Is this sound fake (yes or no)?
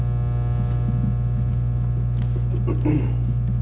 no